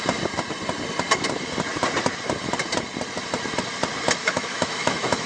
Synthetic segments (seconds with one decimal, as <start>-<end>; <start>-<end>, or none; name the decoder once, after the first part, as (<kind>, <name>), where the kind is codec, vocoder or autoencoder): 4.2-5.3 (autoencoder, DAC-VAE)